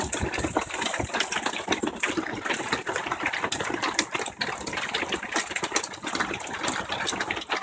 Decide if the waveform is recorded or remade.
recorded